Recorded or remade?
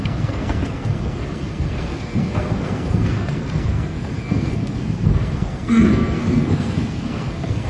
remade